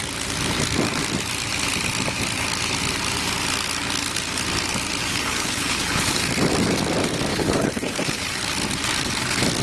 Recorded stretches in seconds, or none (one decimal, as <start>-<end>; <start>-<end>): 0.0-5.1; 6.2-7.3; 8.4-9.6